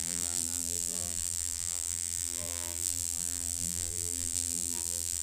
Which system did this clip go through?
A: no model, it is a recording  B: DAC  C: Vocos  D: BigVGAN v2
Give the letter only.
D